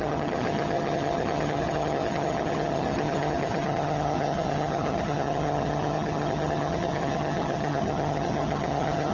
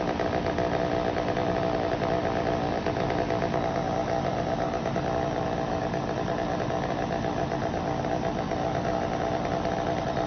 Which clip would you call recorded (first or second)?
second